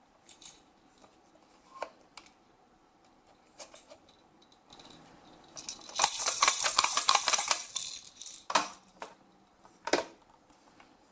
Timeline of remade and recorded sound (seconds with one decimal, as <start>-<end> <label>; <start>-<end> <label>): 0.0-4.7 remade; 4.7-6.0 recorded; 6.0-7.6 remade; 7.6-8.2 recorded; 8.2-11.1 remade